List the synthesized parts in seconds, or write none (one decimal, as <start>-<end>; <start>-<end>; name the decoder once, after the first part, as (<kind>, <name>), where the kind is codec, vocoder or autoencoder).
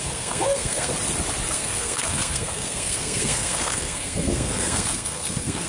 0.0-0.9 (codec, SNAC); 1.5-5.7